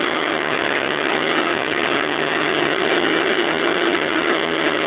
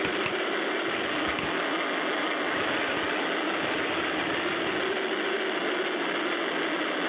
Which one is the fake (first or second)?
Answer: first